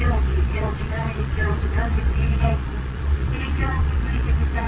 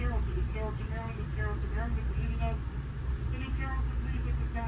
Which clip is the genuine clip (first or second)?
second